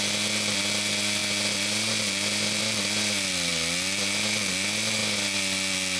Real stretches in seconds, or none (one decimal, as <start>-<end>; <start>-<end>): 0.0-6.0